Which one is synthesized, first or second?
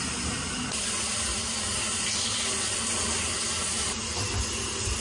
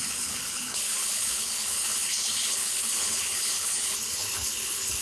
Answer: second